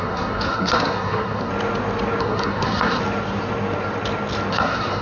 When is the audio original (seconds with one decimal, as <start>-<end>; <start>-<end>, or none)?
1.5-2.2; 3.0-4.5